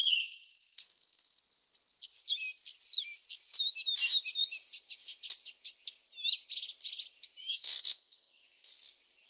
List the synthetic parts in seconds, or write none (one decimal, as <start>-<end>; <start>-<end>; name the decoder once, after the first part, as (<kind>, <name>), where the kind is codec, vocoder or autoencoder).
0.0-1.4 (codec, SNAC); 7.4-8.7